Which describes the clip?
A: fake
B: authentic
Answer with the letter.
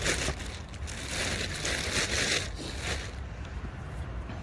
B